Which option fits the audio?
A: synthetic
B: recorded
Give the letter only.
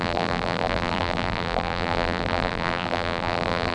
A